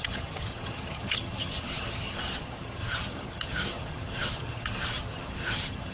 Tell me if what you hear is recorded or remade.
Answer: remade